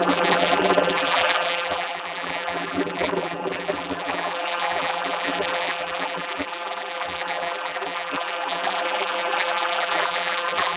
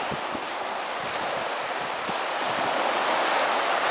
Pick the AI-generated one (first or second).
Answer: first